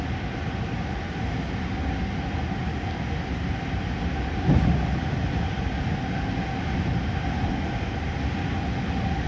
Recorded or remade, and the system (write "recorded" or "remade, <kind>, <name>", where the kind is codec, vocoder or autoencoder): recorded